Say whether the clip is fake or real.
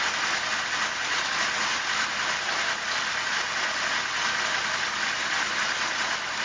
real